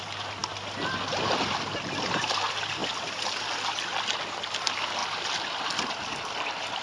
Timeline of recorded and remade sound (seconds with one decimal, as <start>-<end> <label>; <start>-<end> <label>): 0.0-6.8 recorded